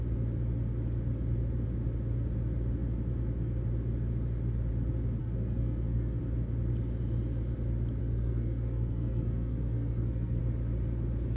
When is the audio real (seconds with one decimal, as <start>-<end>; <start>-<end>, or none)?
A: 0.0-5.2; 6.2-8.0; 10.4-11.4